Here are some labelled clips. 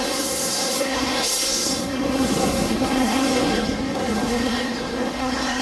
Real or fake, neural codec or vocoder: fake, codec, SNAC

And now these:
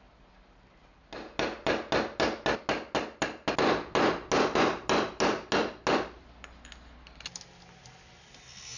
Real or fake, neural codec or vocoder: real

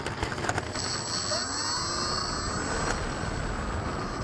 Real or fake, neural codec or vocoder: real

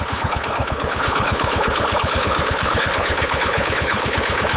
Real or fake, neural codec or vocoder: fake, codec, HILCodec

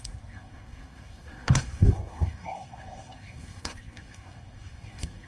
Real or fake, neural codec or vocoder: fake, codec, SNAC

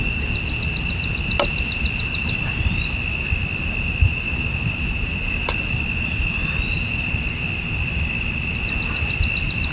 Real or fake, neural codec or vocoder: real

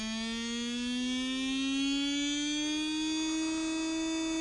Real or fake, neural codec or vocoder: real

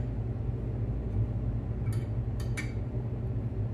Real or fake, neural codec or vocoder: real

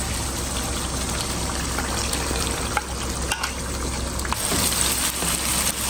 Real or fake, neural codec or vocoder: real